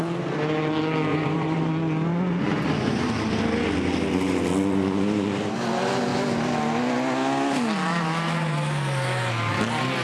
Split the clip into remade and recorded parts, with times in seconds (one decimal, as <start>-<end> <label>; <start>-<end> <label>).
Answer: 0.0-1.1 recorded; 1.1-1.7 remade; 1.7-2.1 recorded; 2.1-3.0 remade; 3.0-10.0 recorded